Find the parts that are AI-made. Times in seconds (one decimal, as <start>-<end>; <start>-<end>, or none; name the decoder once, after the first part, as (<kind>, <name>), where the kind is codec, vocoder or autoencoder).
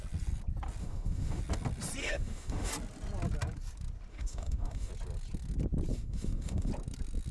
0.8-1.4 (autoencoder, DAC-VAE); 2.0-2.7; 4.1-4.9; 5.9-6.7